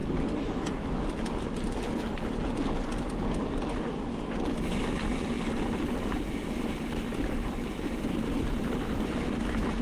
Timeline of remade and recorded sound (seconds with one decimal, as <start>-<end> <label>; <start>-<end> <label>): 0.0-9.8 recorded